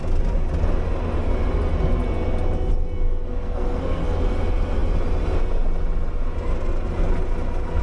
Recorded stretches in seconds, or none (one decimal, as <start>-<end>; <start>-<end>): 0.0-3.3; 4.0-7.8